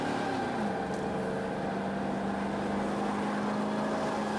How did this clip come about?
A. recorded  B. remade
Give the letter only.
A